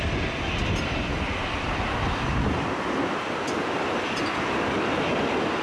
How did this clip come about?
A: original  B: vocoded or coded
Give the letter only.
A